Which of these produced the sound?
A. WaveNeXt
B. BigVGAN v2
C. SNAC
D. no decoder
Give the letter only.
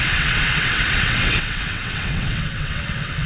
A